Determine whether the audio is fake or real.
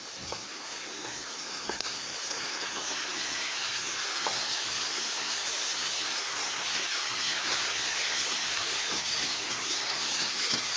fake